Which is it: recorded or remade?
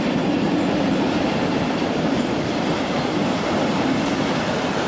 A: remade